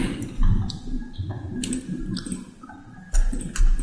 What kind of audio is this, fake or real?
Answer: real